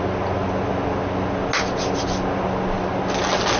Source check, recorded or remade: recorded